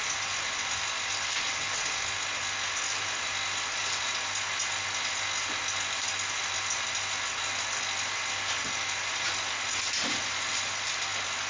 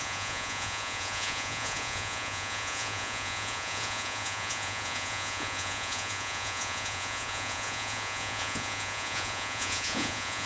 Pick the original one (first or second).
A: first